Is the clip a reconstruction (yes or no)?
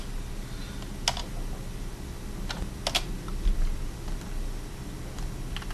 no